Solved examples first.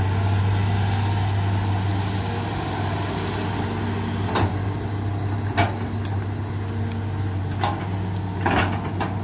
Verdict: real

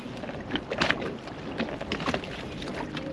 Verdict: real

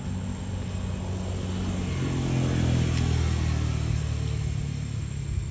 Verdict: real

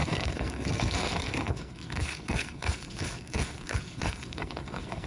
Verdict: fake